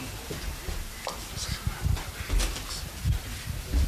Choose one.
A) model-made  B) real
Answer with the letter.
B